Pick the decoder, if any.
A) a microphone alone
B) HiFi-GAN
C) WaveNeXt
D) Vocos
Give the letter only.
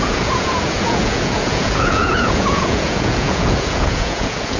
D